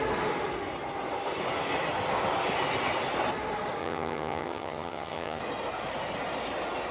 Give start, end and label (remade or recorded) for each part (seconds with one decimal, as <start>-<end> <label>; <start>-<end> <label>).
0.0-3.8 recorded; 3.8-5.4 remade; 5.4-6.9 recorded